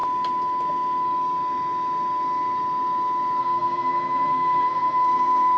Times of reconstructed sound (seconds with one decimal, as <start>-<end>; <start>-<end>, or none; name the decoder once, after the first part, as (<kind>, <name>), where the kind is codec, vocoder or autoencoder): 3.4-5.6 (codec, SNAC)